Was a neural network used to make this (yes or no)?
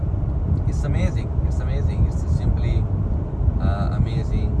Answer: no